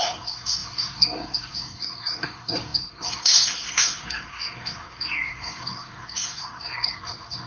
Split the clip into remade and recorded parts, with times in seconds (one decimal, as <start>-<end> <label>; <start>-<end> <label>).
0.0-7.5 remade